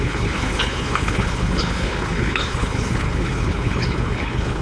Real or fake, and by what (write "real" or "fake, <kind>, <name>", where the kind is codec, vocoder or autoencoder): fake, codec, HILCodec